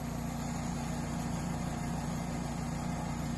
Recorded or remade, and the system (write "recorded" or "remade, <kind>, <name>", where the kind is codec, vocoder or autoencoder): recorded